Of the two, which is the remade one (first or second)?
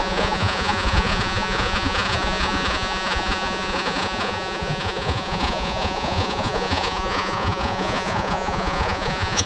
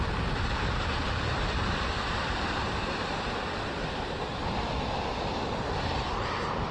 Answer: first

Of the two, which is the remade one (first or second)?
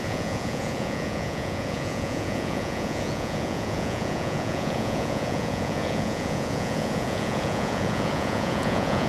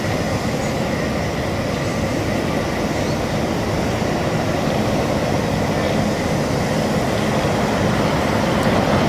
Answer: first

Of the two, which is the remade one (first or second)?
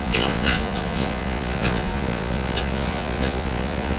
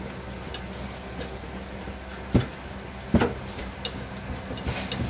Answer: first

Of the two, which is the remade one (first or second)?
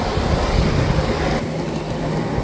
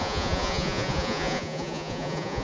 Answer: second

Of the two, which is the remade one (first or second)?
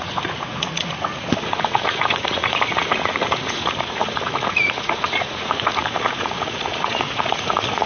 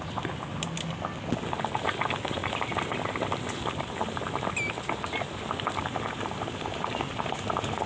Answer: first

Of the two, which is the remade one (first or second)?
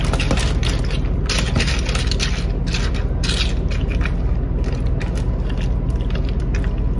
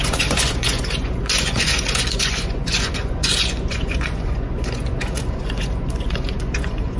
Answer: second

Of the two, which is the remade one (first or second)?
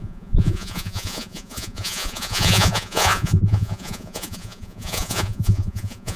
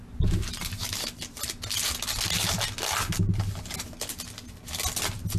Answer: first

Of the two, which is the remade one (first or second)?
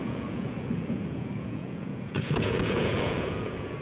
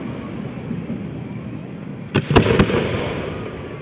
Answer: first